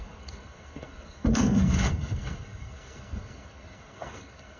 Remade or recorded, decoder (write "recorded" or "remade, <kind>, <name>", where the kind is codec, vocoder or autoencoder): remade, codec, SNAC